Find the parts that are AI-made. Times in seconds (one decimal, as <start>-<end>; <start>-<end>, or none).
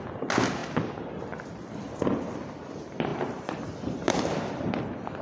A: 3.1-4.8